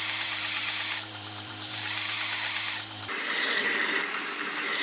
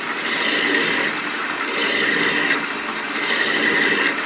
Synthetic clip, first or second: first